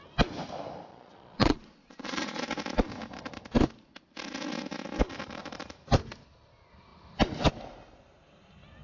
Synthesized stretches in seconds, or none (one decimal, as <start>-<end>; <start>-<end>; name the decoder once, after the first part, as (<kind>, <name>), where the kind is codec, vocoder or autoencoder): 0.9-2.4 (vocoder, Vocos)